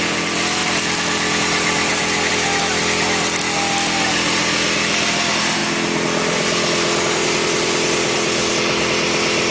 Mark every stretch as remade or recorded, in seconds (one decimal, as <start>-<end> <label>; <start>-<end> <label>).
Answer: 0.0-9.5 recorded